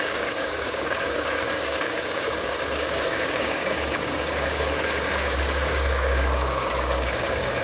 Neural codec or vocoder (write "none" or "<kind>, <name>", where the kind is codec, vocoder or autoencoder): codec, DAC